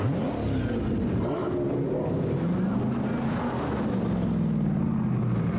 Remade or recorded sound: recorded